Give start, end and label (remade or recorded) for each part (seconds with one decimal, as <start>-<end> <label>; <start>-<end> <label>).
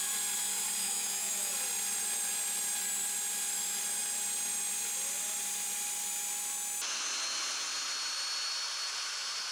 0.0-0.8 recorded; 0.8-1.5 remade; 1.5-9.5 recorded